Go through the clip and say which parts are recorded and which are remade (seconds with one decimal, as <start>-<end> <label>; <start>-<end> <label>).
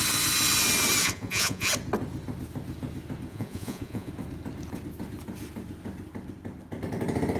0.0-1.0 recorded; 1.0-1.7 remade; 1.7-3.3 recorded; 3.3-4.1 remade; 4.1-7.4 recorded